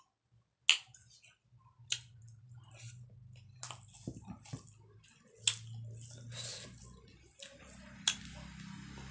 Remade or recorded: recorded